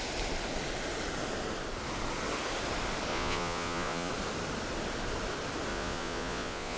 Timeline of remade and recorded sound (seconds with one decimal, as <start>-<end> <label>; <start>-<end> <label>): 0.0-3.1 recorded; 3.1-4.1 remade; 4.1-5.7 recorded; 5.7-6.8 remade